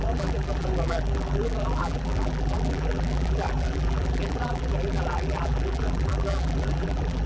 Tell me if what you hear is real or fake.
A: fake